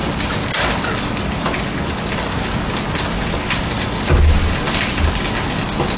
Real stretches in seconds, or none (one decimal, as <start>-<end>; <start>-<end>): 0.0-6.0

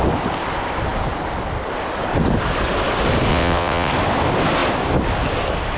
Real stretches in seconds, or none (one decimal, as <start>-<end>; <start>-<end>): 0.0-3.3; 3.9-5.8